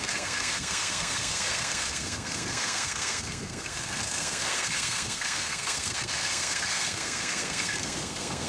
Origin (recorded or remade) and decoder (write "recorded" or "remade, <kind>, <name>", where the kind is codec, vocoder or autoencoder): remade, codec, SNAC